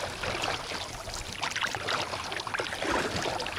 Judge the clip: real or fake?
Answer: real